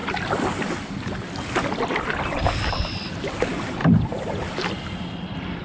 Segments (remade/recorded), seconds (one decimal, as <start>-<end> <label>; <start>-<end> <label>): 0.0-3.8 recorded; 3.8-5.6 remade